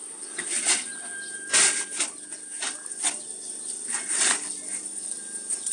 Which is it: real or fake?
fake